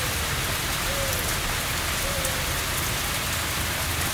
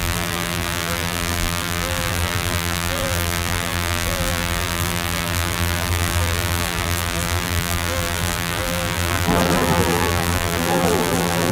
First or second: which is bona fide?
first